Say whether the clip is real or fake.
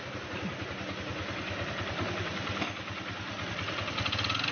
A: real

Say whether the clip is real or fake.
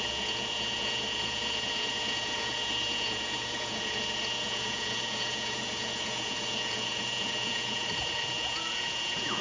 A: fake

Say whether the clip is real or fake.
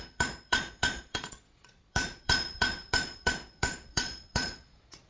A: fake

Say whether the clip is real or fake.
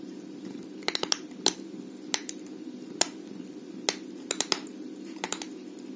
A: real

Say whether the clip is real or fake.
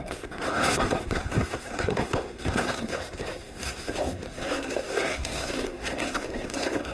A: fake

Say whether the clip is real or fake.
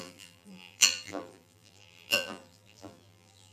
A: fake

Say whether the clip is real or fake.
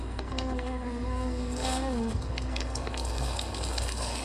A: fake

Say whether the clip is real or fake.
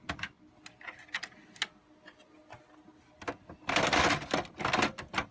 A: real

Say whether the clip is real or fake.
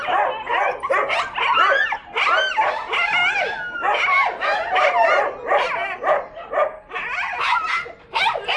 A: real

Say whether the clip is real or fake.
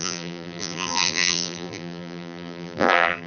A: fake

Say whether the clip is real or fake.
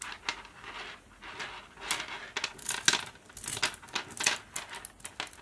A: real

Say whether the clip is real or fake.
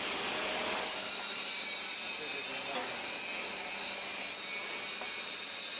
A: real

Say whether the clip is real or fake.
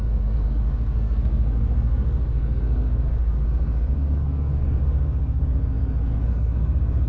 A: fake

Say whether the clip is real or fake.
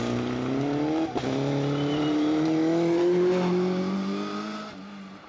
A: real